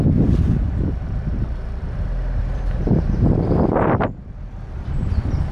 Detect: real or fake fake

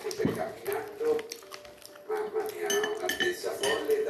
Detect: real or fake real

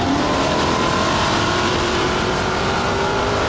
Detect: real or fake fake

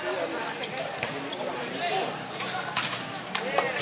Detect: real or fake real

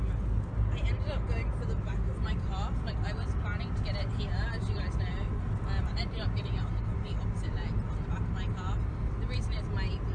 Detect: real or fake real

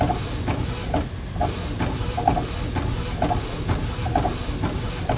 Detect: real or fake real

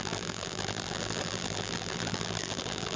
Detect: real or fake fake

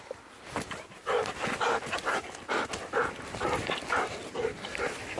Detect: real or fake real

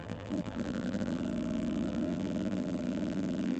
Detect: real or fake fake